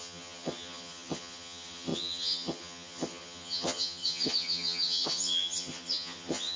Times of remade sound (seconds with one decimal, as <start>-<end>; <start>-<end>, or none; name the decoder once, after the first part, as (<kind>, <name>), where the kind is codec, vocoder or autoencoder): 0.0-6.6 (vocoder, HiFi-GAN)

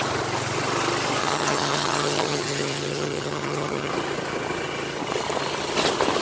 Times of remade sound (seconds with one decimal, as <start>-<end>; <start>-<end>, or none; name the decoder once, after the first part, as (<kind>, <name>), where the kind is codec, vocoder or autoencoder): 1.2-3.9 (vocoder, HiFi-GAN)